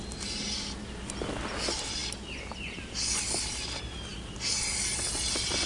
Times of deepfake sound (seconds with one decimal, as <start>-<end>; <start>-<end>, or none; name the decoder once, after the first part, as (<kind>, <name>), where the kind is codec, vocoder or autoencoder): none